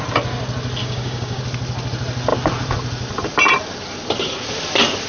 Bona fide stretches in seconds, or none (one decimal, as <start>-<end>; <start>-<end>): 0.0-0.8; 1.4-5.1